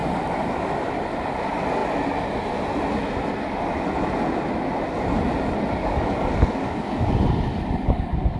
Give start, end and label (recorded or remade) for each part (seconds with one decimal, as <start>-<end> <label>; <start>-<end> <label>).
0.0-5.8 recorded; 5.8-7.1 remade; 7.1-7.5 recorded; 7.5-8.4 remade